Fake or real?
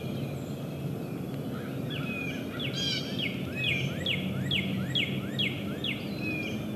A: real